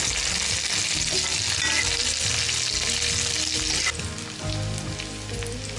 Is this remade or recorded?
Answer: recorded